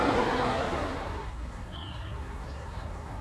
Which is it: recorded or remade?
remade